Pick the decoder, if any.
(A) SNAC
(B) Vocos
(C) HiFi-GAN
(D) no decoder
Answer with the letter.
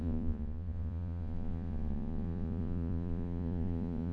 B